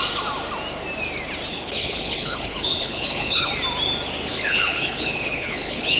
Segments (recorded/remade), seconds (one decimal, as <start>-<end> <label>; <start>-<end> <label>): 0.0-1.5 recorded; 1.5-3.5 remade; 3.5-4.3 recorded; 4.3-6.0 remade